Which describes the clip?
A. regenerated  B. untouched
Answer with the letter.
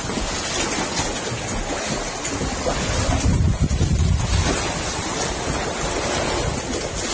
B